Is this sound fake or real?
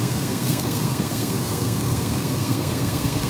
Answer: fake